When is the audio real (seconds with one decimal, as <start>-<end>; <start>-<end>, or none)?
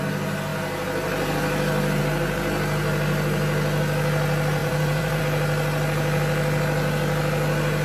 0.0-4.6; 5.2-7.8